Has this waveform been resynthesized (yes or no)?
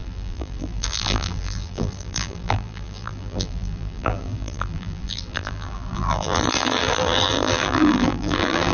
yes